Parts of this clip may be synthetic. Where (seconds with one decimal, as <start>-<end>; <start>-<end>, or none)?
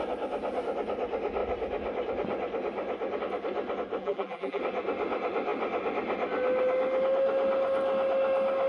4.0-4.6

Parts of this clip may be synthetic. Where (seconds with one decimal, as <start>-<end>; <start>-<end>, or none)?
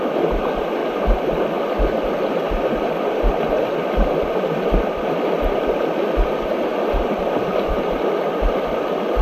6.7-7.7